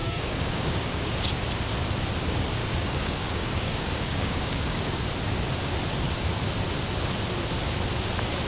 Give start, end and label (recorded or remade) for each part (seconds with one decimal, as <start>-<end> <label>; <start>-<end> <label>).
0.0-1.1 remade; 1.1-2.6 recorded; 2.6-5.0 remade; 5.0-8.5 recorded